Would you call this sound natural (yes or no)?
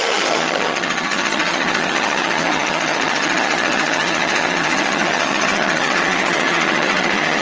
no